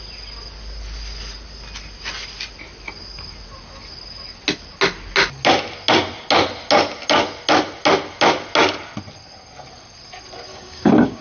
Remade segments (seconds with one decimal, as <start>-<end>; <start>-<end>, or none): 10.5-11.2